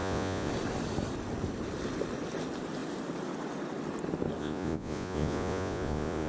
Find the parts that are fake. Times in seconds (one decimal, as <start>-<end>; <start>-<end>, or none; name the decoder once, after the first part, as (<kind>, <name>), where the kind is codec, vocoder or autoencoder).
0.0-0.5 (vocoder, Vocos); 4.4-6.3